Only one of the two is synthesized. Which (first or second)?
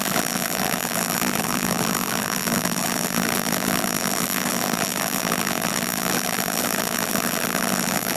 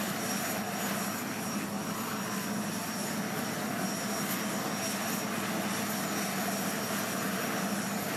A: first